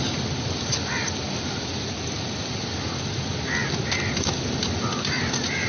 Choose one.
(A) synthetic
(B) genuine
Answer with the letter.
B